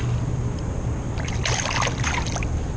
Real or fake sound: real